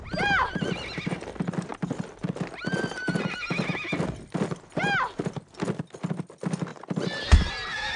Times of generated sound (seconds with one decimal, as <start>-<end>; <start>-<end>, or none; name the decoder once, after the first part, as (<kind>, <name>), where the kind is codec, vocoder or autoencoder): none